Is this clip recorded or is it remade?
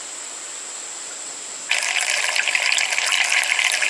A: recorded